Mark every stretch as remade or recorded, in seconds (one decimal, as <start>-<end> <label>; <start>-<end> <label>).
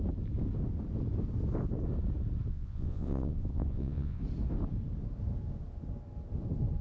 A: 0.0-2.5 recorded; 2.5-4.2 remade; 4.2-6.8 recorded